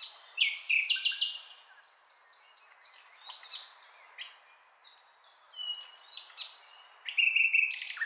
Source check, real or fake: real